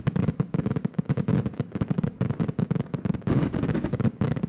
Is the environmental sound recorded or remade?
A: remade